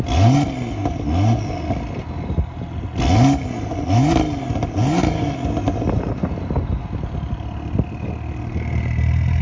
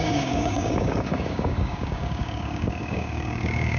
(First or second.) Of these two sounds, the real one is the first